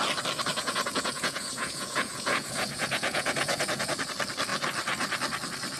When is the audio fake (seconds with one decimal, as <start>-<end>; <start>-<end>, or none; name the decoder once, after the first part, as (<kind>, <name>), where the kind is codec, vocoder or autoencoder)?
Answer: 0.5-4.0 (vocoder, Vocos)